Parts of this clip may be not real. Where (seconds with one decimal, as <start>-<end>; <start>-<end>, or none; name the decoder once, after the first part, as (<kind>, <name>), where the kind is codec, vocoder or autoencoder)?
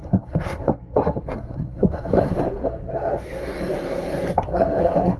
0.0-5.2 (codec, SNAC)